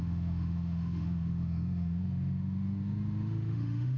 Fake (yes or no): yes